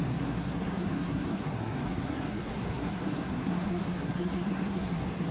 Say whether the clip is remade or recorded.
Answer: remade